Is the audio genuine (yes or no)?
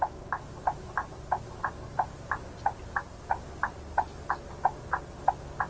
yes